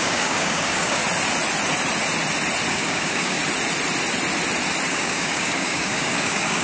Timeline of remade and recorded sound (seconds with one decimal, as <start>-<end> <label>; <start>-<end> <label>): 0.0-1.0 remade; 1.0-2.7 recorded; 2.7-3.4 remade; 3.4-4.9 recorded; 4.9-6.6 remade